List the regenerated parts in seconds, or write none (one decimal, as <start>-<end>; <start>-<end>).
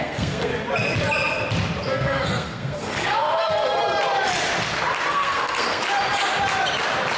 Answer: 0.0-0.5; 1.9-3.8; 5.1-5.8